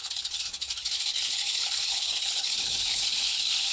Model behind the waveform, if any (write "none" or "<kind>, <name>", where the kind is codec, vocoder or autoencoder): codec, HILCodec